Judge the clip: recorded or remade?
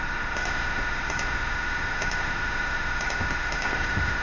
remade